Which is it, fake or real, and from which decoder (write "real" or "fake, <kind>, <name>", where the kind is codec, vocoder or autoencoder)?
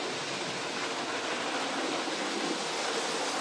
real